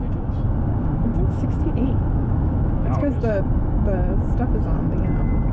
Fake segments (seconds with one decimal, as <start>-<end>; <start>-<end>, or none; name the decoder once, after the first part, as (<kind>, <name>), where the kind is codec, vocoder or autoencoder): 1.1-3.4 (autoencoder, DAC-VAE)

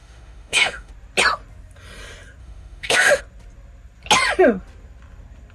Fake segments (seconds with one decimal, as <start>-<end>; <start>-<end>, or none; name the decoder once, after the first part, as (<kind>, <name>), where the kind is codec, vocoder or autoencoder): 0.0-0.9 (autoencoder, DAC-VAE); 2.4-3.2

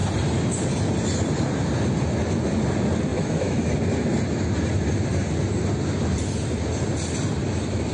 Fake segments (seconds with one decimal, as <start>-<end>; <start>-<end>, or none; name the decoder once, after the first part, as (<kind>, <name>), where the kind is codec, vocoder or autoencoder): 3.1-3.7 (autoencoder, DAC-VAE)

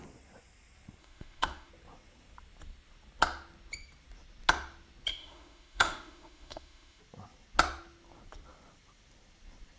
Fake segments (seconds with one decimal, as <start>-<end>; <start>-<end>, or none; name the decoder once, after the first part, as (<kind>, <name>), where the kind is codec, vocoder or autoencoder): 1.0-1.7 (autoencoder, DAC-VAE); 5.1-7.0

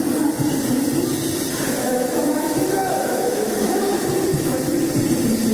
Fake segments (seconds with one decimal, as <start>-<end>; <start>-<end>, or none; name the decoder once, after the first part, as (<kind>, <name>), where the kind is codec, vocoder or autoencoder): 1.8-4.8 (autoencoder, DAC-VAE)

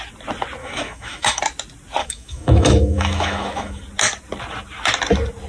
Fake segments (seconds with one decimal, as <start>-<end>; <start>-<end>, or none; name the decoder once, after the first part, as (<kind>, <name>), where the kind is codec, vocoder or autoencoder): 0.6-1.4 (autoencoder, DAC-VAE); 2.0-3.8

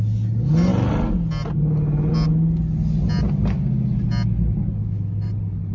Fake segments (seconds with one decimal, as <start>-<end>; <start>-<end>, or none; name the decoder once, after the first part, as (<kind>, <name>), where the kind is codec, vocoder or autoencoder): 4.8-5.3 (autoencoder, DAC-VAE)